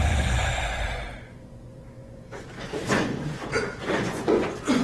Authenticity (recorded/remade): remade